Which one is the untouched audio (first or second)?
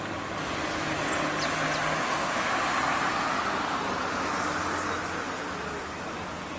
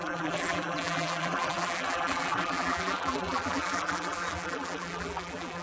first